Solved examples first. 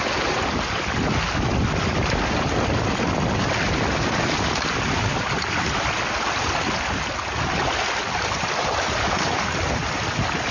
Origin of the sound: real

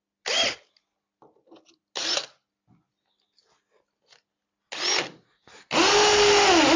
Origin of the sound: real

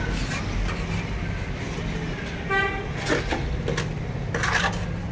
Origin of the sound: real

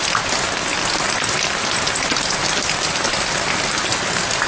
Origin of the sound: real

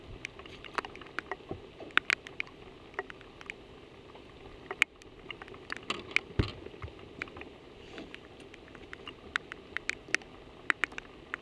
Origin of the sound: real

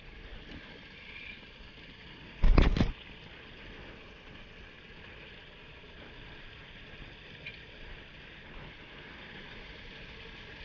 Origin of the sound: real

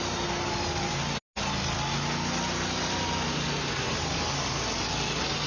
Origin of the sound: real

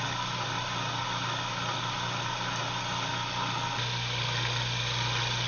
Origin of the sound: real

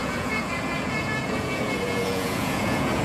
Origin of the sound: fake